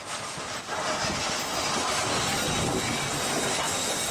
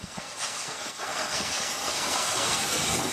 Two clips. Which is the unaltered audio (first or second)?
first